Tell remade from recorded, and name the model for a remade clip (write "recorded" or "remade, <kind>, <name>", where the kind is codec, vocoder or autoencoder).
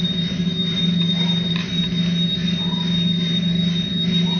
recorded